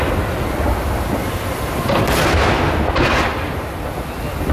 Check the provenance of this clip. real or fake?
real